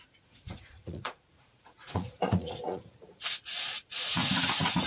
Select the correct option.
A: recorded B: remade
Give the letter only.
B